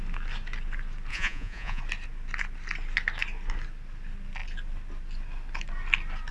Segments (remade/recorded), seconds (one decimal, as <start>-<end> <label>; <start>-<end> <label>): 0.0-1.1 recorded; 1.1-1.8 remade; 1.8-6.3 recorded